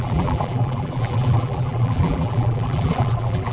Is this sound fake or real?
fake